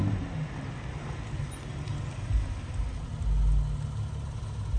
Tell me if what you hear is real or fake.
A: real